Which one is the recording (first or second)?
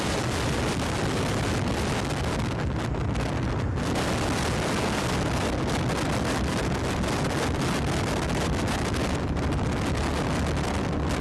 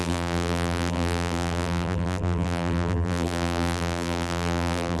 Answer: first